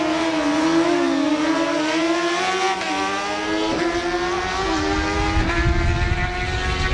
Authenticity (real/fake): real